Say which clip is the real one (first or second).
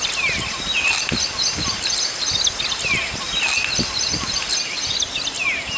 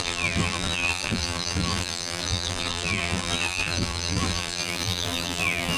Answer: first